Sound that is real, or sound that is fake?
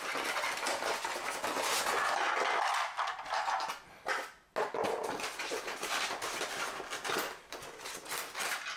real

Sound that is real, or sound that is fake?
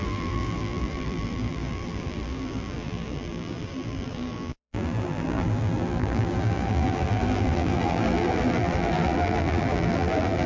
fake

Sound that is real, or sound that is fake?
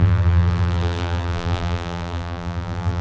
fake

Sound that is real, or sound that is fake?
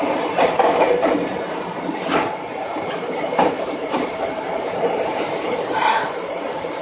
fake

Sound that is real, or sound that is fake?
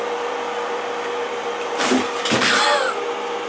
real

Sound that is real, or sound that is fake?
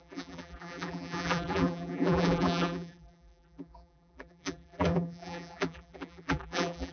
fake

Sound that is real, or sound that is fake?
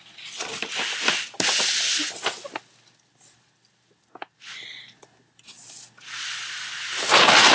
real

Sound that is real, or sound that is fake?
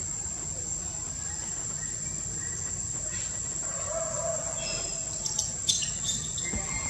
real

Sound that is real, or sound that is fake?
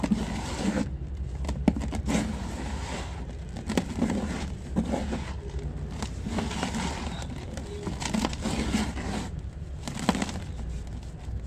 real